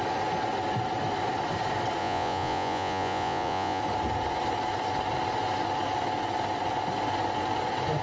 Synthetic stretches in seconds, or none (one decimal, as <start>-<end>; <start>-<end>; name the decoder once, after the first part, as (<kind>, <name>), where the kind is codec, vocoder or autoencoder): 2.0-3.8 (vocoder, Vocos)